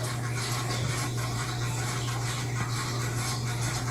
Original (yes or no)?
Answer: yes